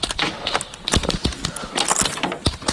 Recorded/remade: recorded